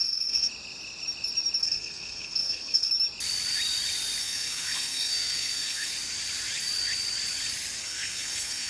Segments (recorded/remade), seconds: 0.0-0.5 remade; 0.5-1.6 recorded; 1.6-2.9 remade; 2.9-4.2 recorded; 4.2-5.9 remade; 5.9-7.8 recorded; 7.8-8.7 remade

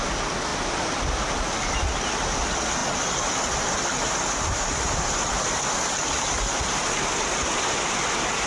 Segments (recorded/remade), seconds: 0.0-8.5 recorded

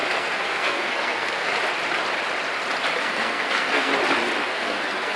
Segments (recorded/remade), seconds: 0.0-1.5 remade; 1.5-3.0 recorded; 3.0-3.9 remade; 3.9-4.4 recorded; 4.4-5.2 remade

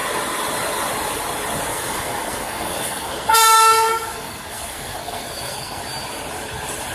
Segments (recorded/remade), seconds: 0.0-1.7 recorded; 1.7-5.8 remade; 5.8-6.9 recorded

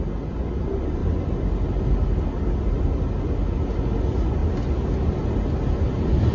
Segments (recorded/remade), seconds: 0.0-6.3 recorded

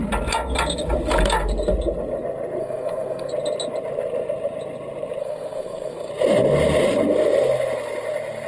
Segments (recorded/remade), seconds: 0.0-2.6 recorded; 2.6-3.3 remade; 3.3-5.2 recorded; 5.2-6.1 remade; 6.1-8.5 recorded

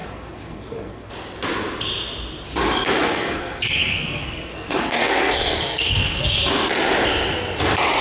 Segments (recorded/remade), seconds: 0.0-1.1 remade; 1.1-3.1 recorded; 3.1-6.2 remade; 6.2-8.0 recorded

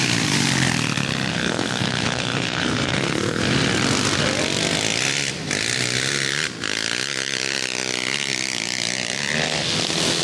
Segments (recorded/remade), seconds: 0.0-1.3 recorded; 1.3-3.4 remade; 3.4-10.2 recorded